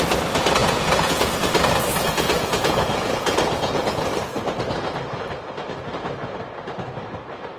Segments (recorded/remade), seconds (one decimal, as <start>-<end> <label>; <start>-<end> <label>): 0.0-0.6 recorded; 0.6-1.3 remade; 1.3-1.9 recorded; 1.9-4.0 remade; 4.0-7.6 recorded